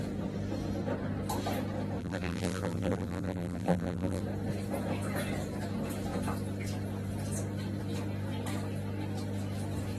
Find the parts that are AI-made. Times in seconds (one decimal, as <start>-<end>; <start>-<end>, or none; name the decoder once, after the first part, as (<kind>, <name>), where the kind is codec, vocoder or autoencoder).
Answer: 2.0-4.2 (vocoder, BigVGAN v2)